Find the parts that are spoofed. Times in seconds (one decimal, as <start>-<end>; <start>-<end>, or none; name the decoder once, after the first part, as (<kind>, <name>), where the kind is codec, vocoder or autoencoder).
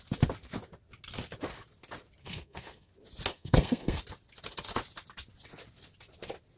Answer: 2.2-2.9 (codec, SNAC); 3.3-4.0